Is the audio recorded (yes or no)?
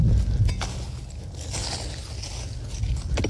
yes